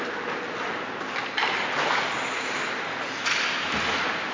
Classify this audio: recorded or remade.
recorded